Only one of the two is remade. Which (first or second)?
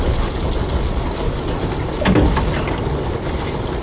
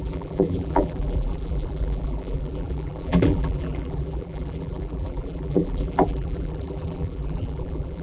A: second